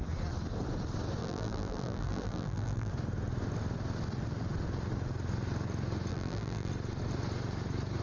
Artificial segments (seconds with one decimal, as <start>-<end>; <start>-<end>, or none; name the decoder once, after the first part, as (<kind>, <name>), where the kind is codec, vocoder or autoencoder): 1.2-2.9 (vocoder, BigVGAN v2); 6.1-6.7